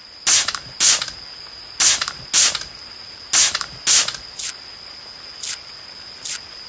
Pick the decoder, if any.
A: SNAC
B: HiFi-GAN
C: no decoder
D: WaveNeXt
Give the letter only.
C